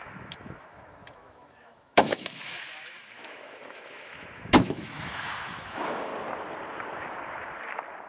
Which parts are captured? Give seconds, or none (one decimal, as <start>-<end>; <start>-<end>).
6.1-8.1